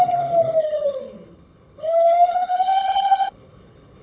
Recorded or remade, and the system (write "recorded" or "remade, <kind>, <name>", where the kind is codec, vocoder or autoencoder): remade, codec, HILCodec